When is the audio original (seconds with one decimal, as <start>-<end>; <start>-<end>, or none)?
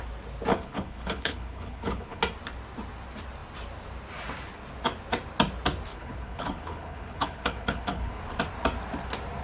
0.0-0.5; 2.2-5.9; 8.2-9.4